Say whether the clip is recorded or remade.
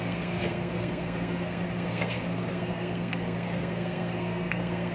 remade